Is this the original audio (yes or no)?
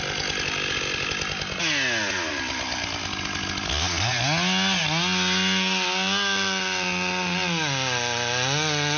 yes